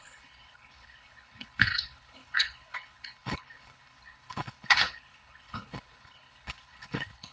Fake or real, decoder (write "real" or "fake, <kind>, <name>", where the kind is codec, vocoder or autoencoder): fake, codec, HILCodec